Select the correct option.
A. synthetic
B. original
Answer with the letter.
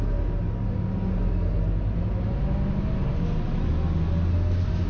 B